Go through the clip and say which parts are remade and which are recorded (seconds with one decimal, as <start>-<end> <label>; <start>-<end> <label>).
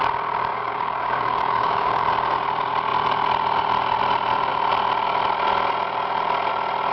0.0-0.5 recorded; 0.5-2.0 remade; 2.0-6.9 recorded